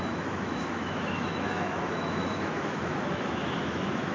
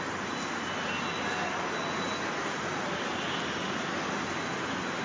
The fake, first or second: first